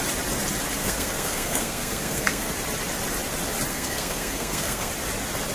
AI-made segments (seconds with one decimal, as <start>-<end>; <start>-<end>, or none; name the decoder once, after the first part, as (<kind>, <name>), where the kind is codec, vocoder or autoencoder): 0.8-2.5 (codec, SNAC); 3.7-4.9